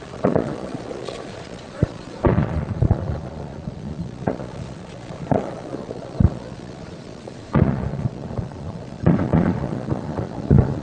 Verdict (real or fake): fake